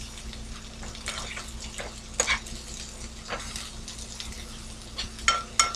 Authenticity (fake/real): real